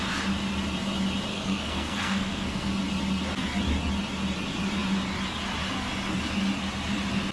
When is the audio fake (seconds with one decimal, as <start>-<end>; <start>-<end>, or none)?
1.3-2.7